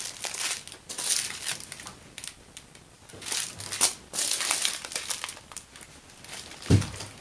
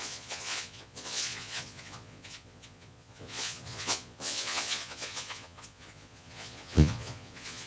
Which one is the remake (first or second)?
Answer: second